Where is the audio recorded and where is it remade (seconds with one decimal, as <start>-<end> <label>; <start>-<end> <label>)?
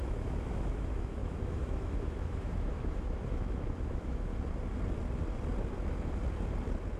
0.0-4.3 remade; 4.3-7.0 recorded